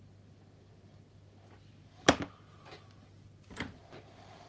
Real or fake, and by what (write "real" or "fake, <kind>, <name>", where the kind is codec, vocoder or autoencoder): real